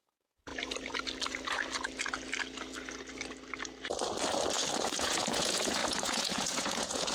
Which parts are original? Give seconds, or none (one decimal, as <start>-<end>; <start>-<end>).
0.5-4.8